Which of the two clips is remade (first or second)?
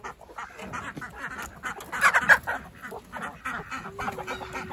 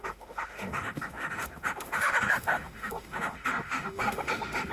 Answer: second